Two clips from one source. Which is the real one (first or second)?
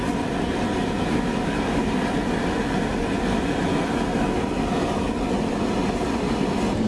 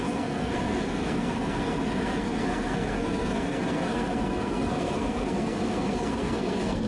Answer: first